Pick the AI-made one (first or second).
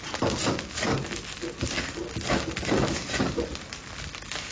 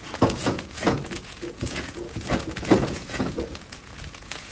second